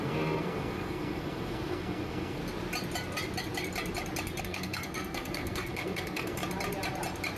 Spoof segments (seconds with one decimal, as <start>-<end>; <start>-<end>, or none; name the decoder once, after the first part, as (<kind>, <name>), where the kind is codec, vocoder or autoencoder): 0.0-2.4 (codec, SNAC); 4.4-6.4